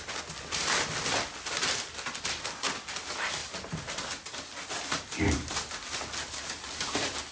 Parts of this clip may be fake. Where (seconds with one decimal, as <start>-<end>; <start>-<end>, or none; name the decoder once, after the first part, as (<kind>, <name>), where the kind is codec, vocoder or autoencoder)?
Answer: none